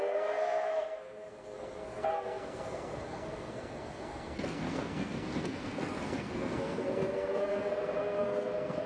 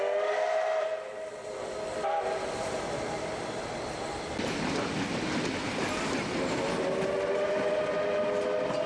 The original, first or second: second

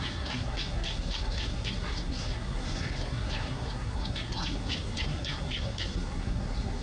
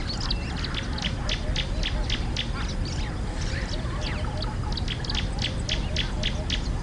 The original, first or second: second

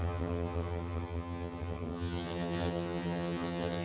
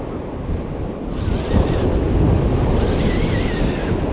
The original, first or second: second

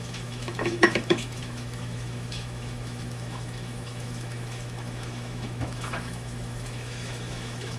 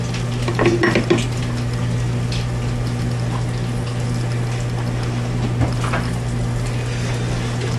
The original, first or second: second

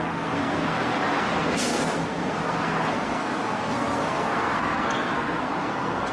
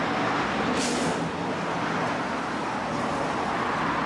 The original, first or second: second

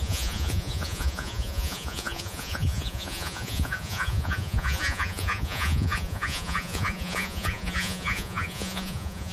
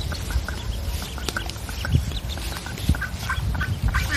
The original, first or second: second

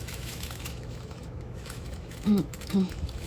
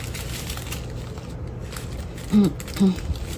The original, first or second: second